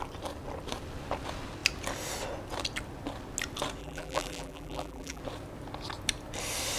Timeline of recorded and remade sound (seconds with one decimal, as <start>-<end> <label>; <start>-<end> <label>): 0.0-3.8 recorded; 3.8-5.2 remade; 5.2-6.8 recorded